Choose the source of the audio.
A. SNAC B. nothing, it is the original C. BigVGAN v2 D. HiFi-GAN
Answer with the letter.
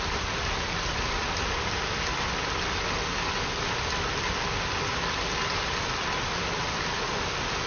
B